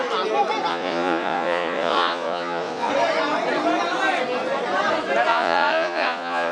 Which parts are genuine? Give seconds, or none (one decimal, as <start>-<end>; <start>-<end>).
0.0-0.7; 2.9-5.3